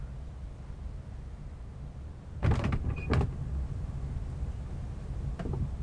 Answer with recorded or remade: recorded